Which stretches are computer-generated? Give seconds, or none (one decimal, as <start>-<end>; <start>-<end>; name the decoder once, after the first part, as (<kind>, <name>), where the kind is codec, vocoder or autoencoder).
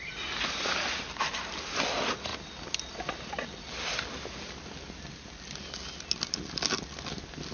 none